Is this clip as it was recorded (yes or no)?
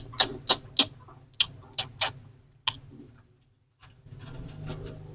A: yes